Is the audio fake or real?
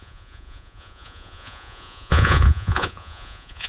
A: fake